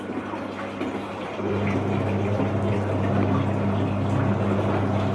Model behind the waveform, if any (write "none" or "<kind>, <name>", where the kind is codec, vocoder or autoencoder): none